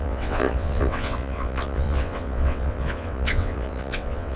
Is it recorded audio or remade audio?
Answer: remade